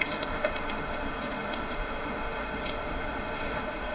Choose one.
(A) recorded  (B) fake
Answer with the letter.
B